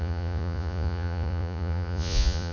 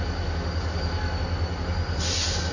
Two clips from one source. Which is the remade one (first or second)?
first